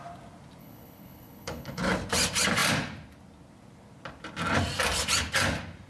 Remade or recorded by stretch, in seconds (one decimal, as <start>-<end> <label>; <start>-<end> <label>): 0.0-0.6 recorded; 0.6-1.8 remade; 1.8-5.9 recorded